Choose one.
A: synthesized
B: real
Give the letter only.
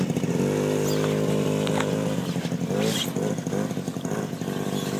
B